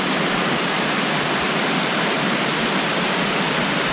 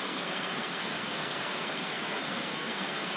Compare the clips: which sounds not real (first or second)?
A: second